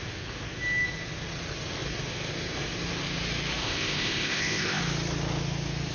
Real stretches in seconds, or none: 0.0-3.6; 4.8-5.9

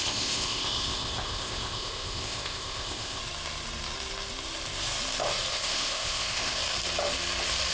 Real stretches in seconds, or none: 3.2-5.5; 6.6-7.7

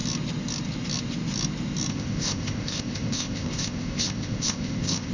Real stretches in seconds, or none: 0.0-1.9

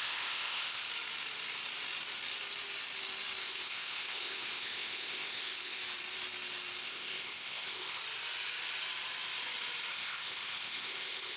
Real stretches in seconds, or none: 0.9-3.4; 5.8-6.8; 8.0-9.9